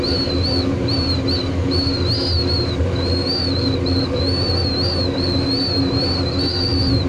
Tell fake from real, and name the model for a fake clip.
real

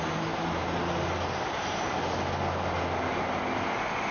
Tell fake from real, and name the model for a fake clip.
real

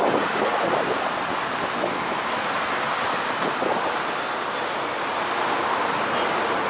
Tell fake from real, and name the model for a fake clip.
real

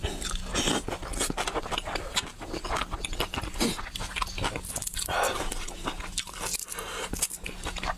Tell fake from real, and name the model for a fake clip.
real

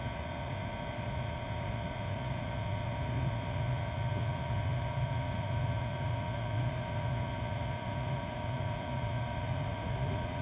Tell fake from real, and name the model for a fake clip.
fake, vocoder, Vocos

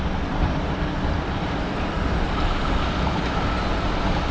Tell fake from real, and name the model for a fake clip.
real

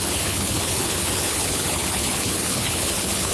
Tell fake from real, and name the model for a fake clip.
fake, codec, HILCodec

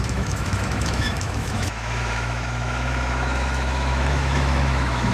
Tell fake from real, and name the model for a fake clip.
fake, autoencoder, DAC-VAE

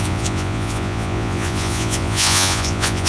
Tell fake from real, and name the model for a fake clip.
fake, vocoder, Vocos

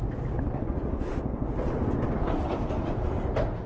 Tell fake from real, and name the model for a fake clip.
real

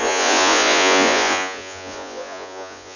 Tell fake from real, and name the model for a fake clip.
fake, vocoder, Vocos